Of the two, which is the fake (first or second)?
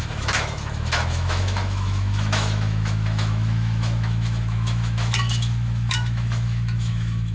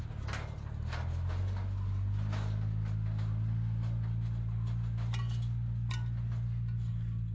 first